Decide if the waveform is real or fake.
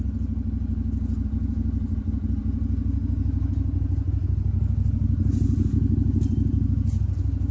real